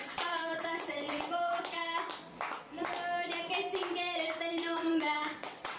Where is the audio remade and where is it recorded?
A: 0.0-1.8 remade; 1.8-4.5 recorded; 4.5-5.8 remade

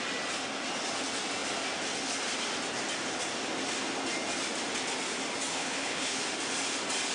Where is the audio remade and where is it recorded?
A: 0.0-5.5 recorded; 5.5-6.2 remade; 6.2-7.1 recorded

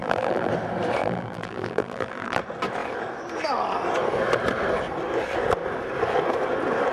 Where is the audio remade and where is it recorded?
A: 0.0-0.5 remade; 0.5-1.0 recorded; 1.0-2.4 remade; 2.4-6.9 recorded

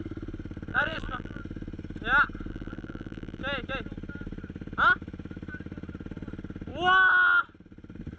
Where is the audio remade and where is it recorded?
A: 0.0-0.7 recorded; 0.7-1.4 remade; 1.4-2.5 recorded; 2.5-3.4 remade; 3.4-8.2 recorded

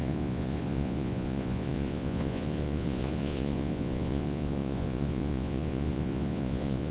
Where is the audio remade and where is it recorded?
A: 0.0-6.9 remade

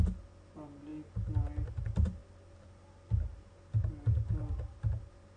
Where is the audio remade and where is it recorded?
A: 0.0-5.4 recorded